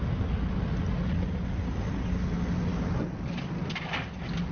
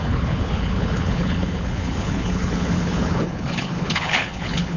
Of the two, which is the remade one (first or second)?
second